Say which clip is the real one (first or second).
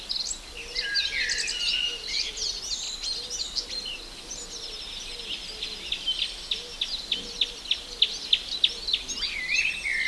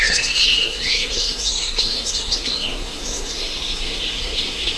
first